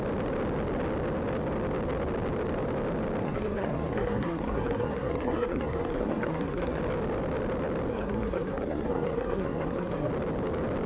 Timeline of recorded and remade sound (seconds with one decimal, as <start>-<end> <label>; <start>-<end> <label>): 0.0-3.2 recorded; 3.2-6.8 remade; 6.8-7.9 recorded; 7.9-10.1 remade; 10.1-10.9 recorded